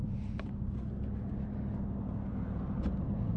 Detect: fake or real real